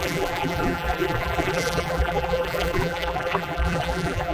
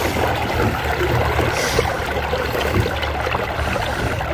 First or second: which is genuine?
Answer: second